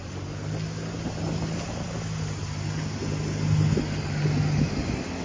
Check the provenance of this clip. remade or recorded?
recorded